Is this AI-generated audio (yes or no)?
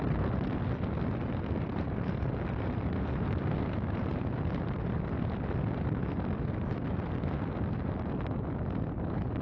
no